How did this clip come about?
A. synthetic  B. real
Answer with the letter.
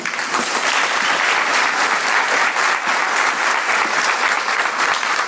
B